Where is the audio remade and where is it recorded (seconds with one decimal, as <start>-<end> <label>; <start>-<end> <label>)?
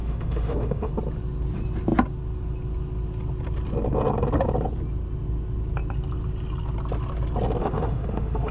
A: 0.0-0.9 remade; 0.9-7.6 recorded; 7.6-8.5 remade